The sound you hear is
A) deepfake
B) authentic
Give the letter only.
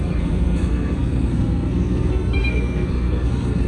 A